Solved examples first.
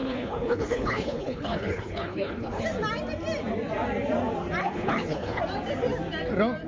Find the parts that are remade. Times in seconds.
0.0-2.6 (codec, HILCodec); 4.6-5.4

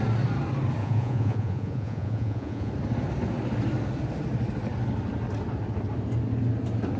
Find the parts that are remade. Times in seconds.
0.8-2.7 (vocoder, Vocos)

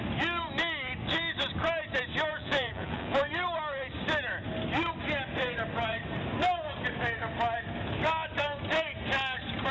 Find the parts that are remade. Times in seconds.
2.3-3.3 (vocoder, Vocos)

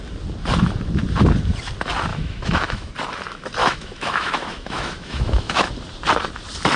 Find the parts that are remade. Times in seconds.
2.1-2.9 (autoencoder, DAC-VAE); 3.6-5.7